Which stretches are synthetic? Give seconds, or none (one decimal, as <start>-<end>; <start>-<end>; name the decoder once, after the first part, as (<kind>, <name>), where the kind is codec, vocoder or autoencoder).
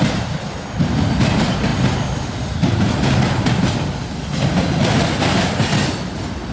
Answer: none